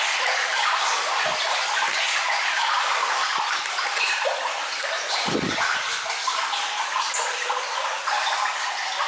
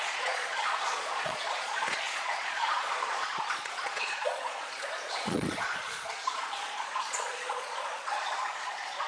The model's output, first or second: second